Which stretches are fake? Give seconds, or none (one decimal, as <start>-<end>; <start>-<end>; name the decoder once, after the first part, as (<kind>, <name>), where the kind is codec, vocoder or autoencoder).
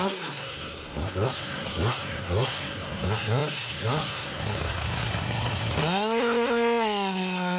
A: 0.0-7.6 (codec, SNAC)